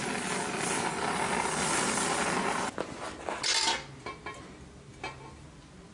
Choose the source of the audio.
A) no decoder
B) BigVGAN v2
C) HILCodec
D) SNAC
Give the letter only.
A